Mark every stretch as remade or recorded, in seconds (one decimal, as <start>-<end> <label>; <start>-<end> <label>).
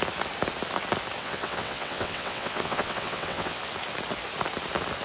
0.0-1.2 recorded; 1.2-3.6 remade; 3.6-5.0 recorded